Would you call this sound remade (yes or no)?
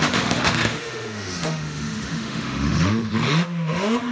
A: yes